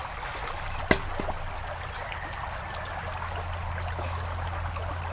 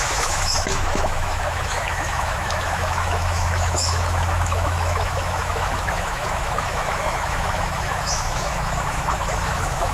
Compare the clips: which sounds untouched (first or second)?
first